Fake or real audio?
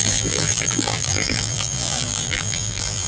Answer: fake